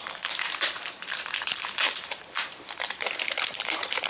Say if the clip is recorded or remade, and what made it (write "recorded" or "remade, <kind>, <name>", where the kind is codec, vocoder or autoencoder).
remade, vocoder, BigVGAN v2